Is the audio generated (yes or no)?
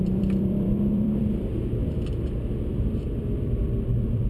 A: yes